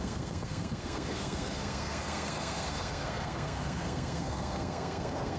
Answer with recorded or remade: remade